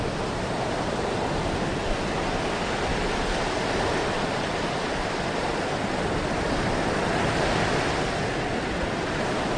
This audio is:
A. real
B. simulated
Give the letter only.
A